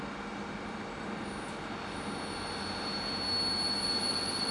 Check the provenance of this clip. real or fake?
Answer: real